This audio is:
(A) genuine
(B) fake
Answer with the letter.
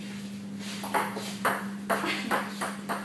A